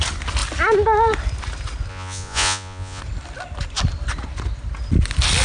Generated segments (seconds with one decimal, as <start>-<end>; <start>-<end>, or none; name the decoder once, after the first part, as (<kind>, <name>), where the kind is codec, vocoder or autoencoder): 1.9-3.0 (vocoder, Vocos)